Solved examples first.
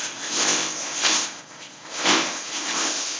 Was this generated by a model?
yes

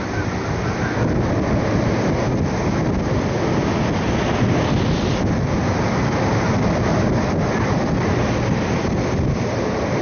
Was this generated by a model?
no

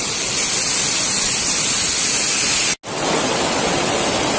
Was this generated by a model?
no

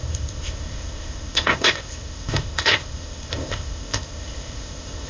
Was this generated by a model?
yes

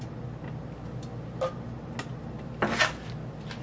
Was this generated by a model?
no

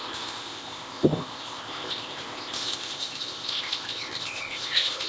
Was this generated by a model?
yes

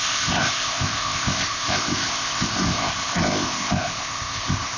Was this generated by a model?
yes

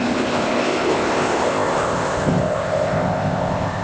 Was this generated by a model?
yes